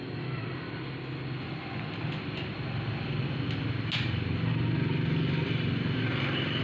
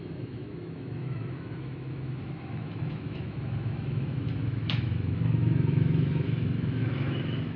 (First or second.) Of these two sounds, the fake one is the second